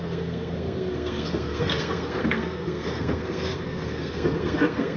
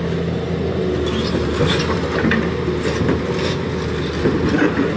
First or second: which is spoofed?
first